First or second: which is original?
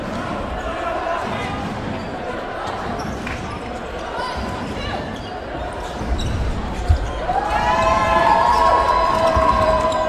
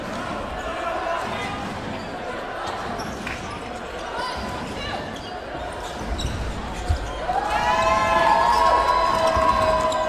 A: second